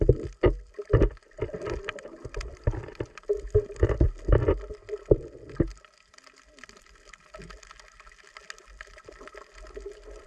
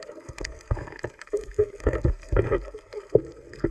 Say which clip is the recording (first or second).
first